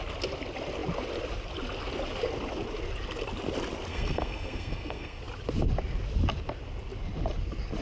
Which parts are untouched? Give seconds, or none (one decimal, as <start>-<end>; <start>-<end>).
0.0-3.9; 5.2-7.8